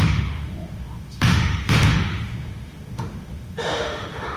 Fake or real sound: fake